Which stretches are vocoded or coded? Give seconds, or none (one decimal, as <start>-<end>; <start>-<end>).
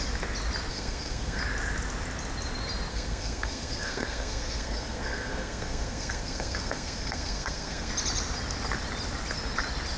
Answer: 0.7-1.4; 2.9-7.9